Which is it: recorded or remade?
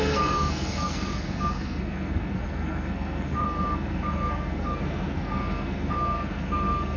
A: remade